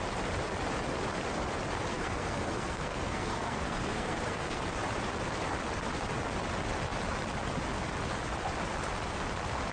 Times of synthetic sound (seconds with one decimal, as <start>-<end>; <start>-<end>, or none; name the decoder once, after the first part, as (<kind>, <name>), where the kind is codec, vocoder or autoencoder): 1.9-4.6 (codec, SNAC)